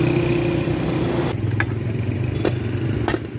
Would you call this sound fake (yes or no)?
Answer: no